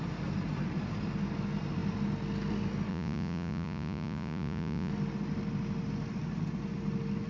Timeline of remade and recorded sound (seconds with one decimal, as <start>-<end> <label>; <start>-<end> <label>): 0.0-2.9 recorded; 2.9-4.9 remade; 4.9-7.3 recorded